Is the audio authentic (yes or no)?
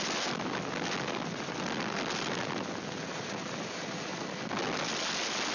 yes